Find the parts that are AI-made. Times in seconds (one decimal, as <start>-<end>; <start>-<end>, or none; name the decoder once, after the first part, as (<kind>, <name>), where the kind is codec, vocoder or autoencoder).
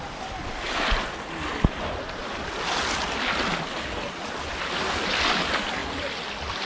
none